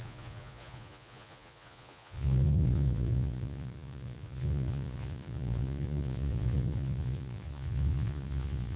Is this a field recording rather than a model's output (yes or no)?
no